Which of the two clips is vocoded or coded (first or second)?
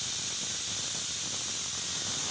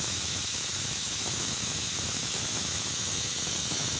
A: second